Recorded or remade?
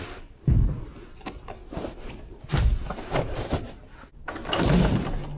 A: recorded